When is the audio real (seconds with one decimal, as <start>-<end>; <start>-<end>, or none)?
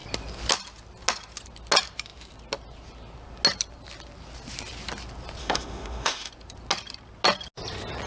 0.0-5.4; 6.3-8.1